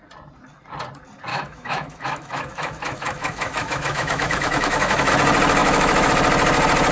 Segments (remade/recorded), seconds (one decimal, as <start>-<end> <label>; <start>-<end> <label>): 0.0-1.3 recorded; 1.3-5.1 remade; 5.1-5.6 recorded; 5.6-6.1 remade; 6.1-6.9 recorded